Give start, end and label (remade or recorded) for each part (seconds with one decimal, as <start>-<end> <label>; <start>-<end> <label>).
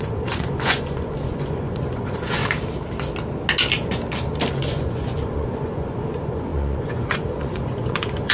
0.0-2.4 remade; 2.4-4.5 recorded; 4.5-8.3 remade